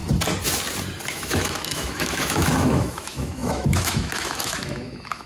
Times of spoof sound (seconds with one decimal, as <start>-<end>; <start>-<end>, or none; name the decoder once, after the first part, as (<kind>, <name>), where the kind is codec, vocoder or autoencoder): 1.1-5.3 (autoencoder, DAC-VAE)